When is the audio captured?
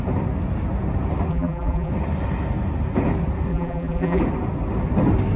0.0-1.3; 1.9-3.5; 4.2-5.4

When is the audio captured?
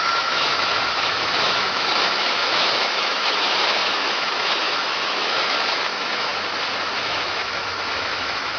6.3-6.9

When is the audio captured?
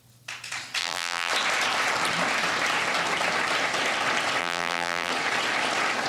0.0-0.8; 1.3-4.4; 5.1-6.1